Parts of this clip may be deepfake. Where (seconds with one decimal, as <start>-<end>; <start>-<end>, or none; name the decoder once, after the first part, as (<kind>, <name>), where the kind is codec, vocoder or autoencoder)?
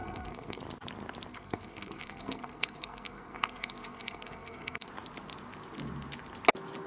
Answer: 0.0-0.6 (codec, SNAC); 1.3-4.9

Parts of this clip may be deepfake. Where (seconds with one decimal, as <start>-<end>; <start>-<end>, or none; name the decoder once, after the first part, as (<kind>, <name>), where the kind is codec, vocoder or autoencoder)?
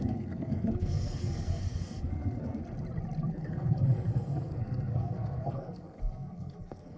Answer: 0.0-2.6 (codec, SNAC); 3.3-7.0